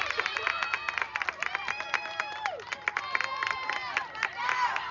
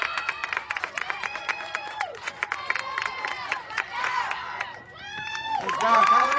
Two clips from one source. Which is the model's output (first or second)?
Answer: second